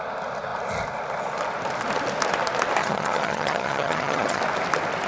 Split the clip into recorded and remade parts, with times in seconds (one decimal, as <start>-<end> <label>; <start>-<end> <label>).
0.0-2.8 recorded; 2.8-4.4 remade; 4.4-5.1 recorded